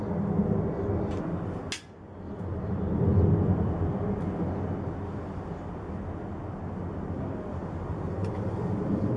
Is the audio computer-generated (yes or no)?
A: no